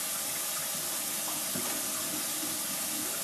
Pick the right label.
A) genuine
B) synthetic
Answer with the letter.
A